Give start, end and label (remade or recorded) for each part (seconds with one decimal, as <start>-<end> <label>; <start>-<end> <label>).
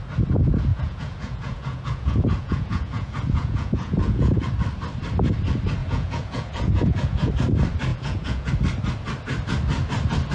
0.0-0.7 recorded; 0.7-4.5 remade; 4.5-5.8 recorded; 5.8-7.3 remade; 7.3-7.9 recorded; 7.9-8.5 remade; 8.5-10.3 recorded